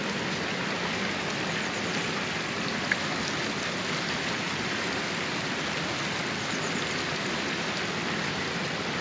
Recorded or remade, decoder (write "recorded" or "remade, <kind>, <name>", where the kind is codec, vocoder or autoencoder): recorded